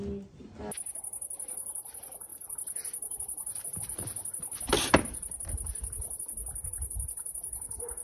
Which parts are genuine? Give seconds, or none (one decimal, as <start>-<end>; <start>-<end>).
0.0-8.0